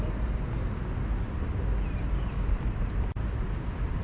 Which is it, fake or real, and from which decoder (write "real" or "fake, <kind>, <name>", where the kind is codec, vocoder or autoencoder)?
real